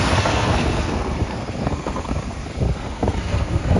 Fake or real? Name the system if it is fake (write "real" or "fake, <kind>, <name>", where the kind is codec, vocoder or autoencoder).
fake, codec, SNAC